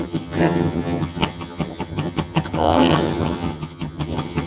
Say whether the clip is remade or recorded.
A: remade